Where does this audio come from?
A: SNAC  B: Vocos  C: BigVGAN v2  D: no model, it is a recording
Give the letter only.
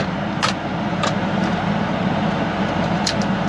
C